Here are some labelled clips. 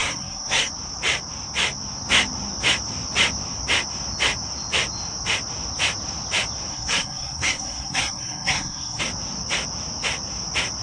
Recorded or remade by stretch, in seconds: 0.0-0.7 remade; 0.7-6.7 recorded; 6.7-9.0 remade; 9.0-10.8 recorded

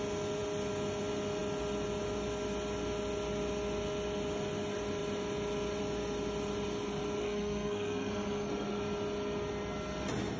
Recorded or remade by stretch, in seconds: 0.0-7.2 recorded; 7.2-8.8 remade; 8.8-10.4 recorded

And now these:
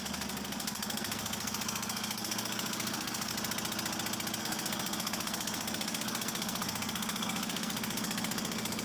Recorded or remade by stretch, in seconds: 0.0-3.3 remade; 3.3-4.4 recorded; 4.4-8.8 remade